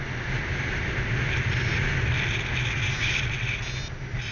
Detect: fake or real real